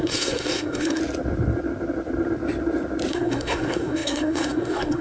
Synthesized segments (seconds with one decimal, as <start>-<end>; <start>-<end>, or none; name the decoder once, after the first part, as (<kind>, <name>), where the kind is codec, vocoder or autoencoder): 0.0-1.0 (codec, SNAC); 3.1-5.0